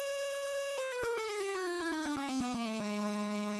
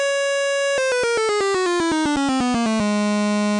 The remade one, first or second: first